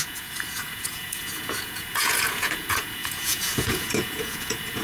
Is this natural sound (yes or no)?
no